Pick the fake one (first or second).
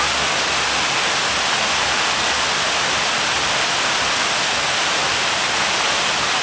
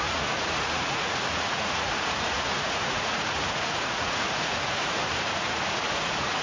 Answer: second